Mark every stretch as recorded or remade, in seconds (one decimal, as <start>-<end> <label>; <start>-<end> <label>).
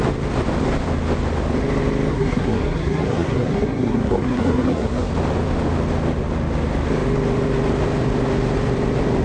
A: 0.0-2.1 recorded; 2.1-5.1 remade; 5.1-9.2 recorded